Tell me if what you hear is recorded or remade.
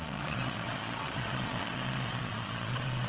remade